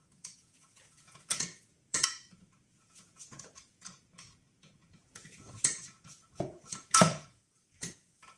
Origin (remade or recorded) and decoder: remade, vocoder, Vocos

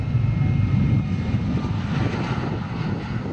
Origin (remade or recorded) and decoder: recorded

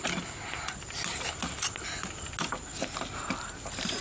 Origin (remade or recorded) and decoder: recorded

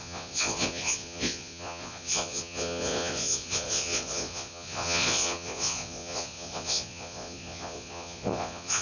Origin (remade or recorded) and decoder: remade, vocoder, Vocos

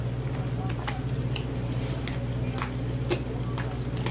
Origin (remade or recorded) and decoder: recorded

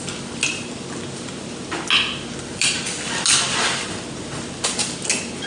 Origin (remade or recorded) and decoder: recorded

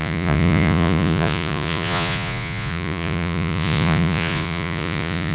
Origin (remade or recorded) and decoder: remade, vocoder, Vocos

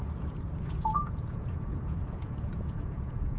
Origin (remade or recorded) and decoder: remade, vocoder, Vocos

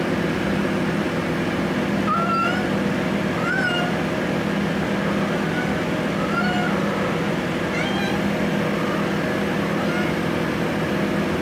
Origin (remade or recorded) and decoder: recorded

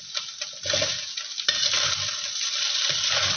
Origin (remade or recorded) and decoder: recorded